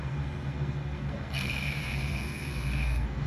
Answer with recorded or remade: remade